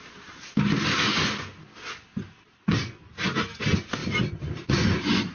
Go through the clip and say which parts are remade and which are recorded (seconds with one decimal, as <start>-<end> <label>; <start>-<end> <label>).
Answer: 0.0-5.3 recorded